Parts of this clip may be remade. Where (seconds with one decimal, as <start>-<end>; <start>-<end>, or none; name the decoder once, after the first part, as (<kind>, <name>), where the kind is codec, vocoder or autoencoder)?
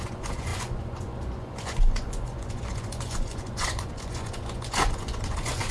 0.0-5.7 (vocoder, Vocos)